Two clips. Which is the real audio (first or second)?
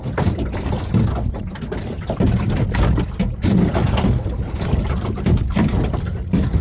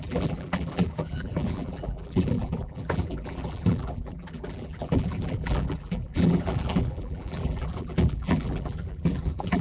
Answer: first